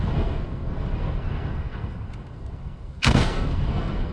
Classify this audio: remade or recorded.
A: remade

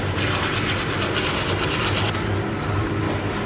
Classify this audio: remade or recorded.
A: recorded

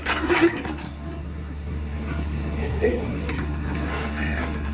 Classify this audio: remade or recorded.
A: remade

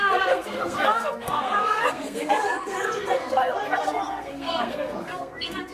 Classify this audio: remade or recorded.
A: remade